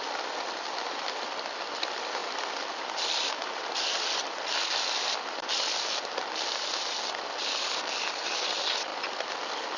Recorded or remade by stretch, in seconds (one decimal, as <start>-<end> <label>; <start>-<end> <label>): 0.0-9.8 recorded